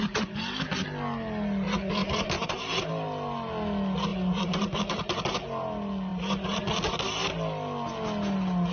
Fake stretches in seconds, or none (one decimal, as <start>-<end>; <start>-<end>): 2.0-2.9; 4.1-4.8; 6.1-6.6